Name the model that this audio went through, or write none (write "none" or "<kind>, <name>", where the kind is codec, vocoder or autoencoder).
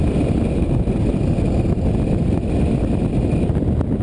none